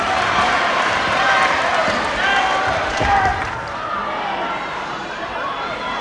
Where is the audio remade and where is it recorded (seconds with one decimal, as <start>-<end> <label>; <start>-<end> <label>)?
0.0-1.7 remade; 1.7-2.7 recorded; 2.7-6.0 remade